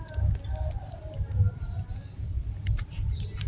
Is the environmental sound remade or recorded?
recorded